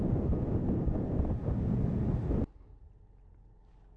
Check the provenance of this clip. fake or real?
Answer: real